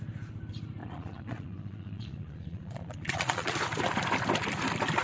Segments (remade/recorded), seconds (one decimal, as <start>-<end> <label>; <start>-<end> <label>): 0.0-0.8 recorded; 0.8-3.6 remade; 3.6-5.0 recorded